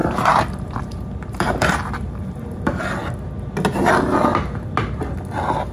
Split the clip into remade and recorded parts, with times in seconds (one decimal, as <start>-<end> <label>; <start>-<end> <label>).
0.0-2.8 remade; 2.8-5.7 recorded